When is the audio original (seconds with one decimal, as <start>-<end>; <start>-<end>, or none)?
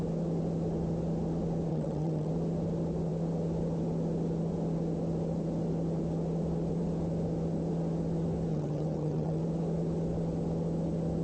0.0-1.7; 2.3-8.5; 9.4-11.2